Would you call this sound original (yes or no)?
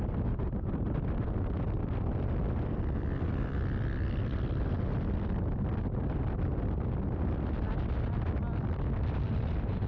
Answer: yes